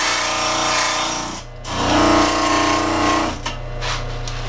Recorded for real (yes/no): yes